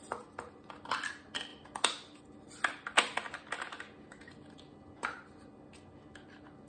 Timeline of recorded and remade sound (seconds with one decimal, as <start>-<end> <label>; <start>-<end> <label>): 0.0-6.7 recorded